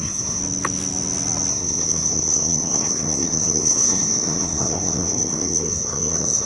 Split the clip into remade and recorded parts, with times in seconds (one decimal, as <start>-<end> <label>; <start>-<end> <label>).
0.0-0.4 remade; 0.4-1.5 recorded; 1.5-6.5 remade

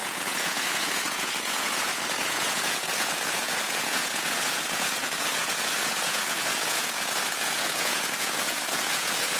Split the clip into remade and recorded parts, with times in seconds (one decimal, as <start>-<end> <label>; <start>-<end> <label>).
0.0-9.4 remade

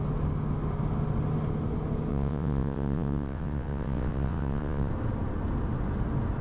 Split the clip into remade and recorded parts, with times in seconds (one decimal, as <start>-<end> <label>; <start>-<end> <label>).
0.0-2.1 recorded; 2.1-4.9 remade; 4.9-6.4 recorded

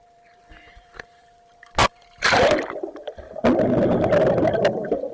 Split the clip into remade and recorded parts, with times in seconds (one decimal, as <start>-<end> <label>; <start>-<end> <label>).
0.0-5.1 remade